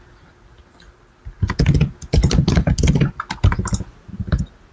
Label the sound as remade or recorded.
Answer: recorded